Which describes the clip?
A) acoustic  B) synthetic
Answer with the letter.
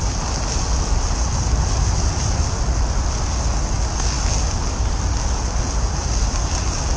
A